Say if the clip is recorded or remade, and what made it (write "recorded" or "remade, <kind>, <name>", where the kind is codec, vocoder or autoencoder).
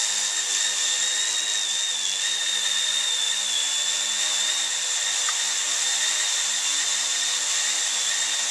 recorded